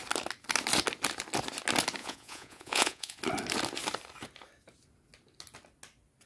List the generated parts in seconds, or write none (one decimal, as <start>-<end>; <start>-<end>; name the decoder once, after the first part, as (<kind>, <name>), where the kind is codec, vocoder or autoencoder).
2.0-3.2 (vocoder, Vocos)